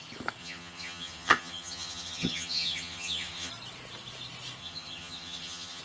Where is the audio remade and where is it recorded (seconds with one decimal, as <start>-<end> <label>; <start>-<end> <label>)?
0.0-0.4 recorded; 0.4-3.5 remade; 3.5-4.6 recorded; 4.6-5.8 remade